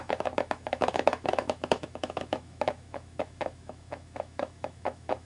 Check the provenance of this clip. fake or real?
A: fake